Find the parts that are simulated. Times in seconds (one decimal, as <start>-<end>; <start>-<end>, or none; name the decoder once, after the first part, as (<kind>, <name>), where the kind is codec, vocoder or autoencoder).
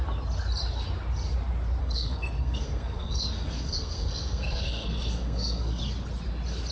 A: 1.8-5.8 (codec, SNAC)